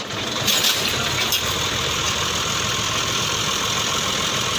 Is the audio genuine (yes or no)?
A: no